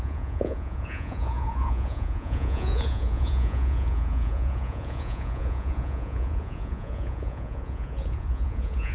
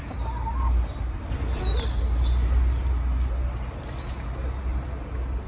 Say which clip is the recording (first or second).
second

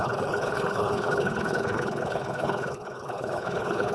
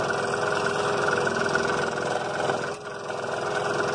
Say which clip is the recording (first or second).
second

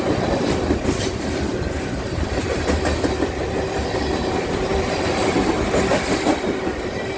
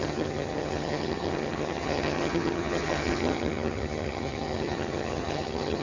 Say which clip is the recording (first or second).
first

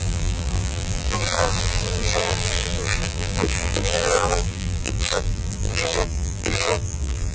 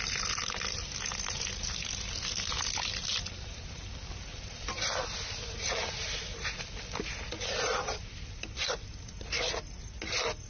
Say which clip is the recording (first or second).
second